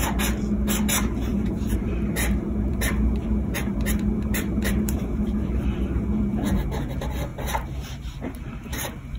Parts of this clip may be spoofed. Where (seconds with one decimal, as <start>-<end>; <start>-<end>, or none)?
1.3-6.5; 7.3-7.9